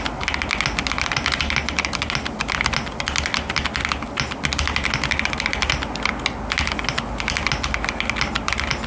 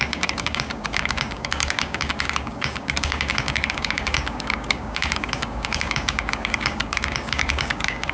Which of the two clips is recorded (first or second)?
first